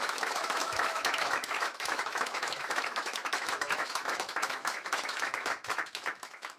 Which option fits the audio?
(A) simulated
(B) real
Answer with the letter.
A